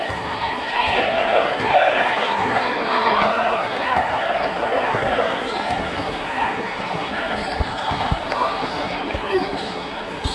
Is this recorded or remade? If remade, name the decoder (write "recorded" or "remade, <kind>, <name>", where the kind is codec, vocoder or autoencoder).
remade, codec, SNAC